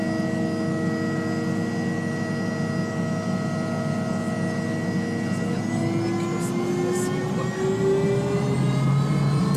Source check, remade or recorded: recorded